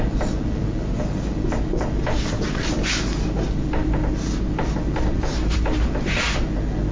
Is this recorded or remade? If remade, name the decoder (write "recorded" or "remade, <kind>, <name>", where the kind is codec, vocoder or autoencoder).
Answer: recorded